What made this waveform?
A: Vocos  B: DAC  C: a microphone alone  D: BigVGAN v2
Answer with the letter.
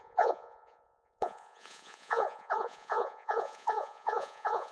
A